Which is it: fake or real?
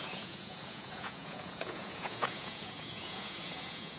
fake